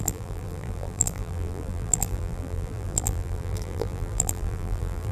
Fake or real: fake